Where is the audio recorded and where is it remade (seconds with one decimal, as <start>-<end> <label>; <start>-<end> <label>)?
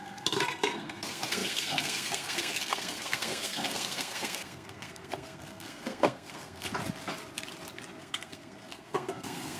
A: 0.0-6.7 remade; 6.7-8.0 recorded; 8.0-9.6 remade